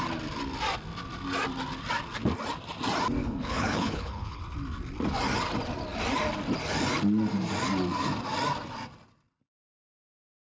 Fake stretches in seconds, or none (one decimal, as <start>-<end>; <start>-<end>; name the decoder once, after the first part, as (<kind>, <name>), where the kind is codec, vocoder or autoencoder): 3.2-4.4 (codec, HILCodec)